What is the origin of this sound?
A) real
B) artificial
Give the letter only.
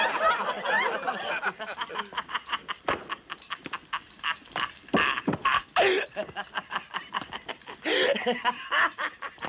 A